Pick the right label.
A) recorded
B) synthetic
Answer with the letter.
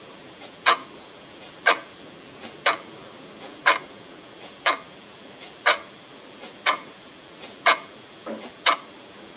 B